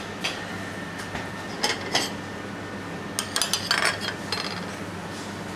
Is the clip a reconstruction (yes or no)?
no